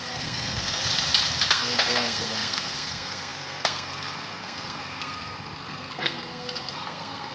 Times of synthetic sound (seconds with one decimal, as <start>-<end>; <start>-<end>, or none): 0.0-0.8; 1.5-7.3